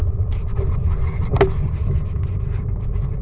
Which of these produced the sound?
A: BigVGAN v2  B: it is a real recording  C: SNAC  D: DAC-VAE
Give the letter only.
B